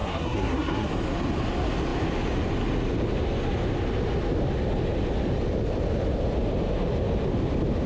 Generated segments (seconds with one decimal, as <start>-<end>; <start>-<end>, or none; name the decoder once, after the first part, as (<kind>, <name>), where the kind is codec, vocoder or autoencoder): 0.0-0.9 (codec, SNAC)